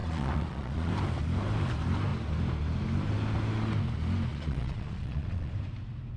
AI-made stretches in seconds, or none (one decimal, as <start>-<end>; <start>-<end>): 0.0-0.9; 4.3-5.5